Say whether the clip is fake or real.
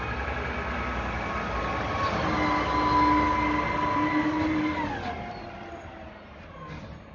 real